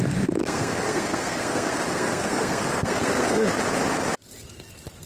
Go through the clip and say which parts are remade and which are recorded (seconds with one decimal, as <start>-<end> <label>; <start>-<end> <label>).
0.0-0.4 recorded; 0.4-3.5 remade; 3.5-5.1 recorded